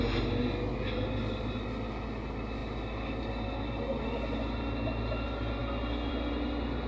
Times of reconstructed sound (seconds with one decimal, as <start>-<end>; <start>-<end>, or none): none